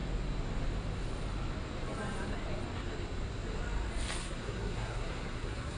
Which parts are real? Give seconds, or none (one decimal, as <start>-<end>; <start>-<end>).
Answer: 0.0-4.2